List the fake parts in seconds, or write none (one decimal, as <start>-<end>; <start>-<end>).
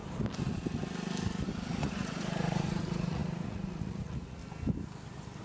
1.8-4.4